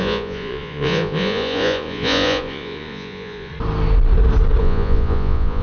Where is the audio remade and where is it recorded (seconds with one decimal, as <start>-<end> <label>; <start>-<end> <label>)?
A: 0.0-3.5 remade; 3.5-4.6 recorded; 4.6-5.6 remade